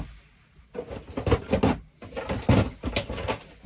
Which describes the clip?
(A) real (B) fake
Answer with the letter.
A